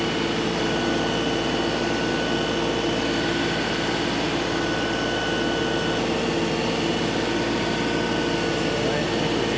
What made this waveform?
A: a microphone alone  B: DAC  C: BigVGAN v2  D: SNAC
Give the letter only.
A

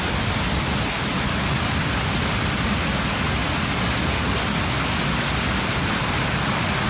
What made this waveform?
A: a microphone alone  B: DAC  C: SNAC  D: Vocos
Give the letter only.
A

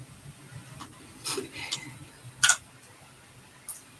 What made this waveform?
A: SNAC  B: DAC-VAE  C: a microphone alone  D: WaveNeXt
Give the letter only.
C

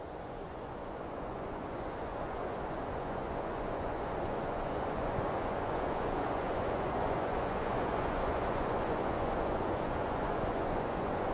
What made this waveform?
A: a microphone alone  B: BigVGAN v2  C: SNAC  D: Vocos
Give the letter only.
D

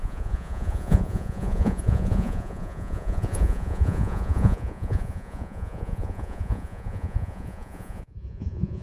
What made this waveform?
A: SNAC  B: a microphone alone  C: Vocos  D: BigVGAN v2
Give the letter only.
C